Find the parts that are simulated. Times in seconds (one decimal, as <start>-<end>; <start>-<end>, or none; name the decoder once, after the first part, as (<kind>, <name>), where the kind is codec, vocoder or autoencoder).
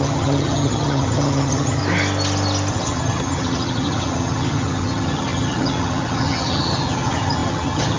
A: 0.0-1.8 (vocoder, HiFi-GAN); 2.7-8.0